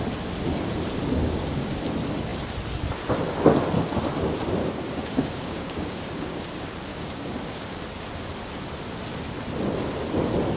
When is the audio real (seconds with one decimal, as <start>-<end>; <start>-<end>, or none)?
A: 0.0-1.2; 1.8-4.6; 6.4-6.9; 7.8-10.6